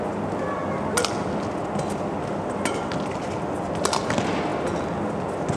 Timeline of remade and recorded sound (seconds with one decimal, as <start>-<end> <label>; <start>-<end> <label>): 0.0-5.6 recorded